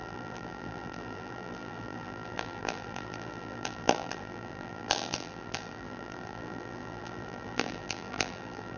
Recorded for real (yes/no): no